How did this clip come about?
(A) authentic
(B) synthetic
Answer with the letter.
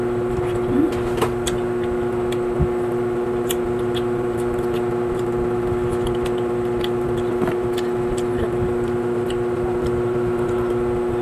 A